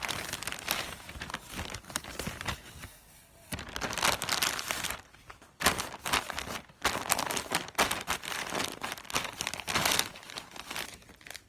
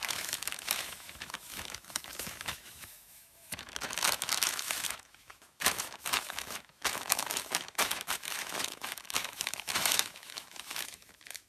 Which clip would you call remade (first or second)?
second